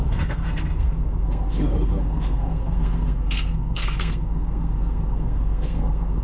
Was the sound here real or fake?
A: fake